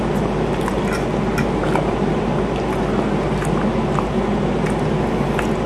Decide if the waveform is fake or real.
real